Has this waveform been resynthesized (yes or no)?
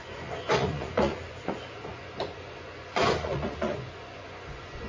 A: yes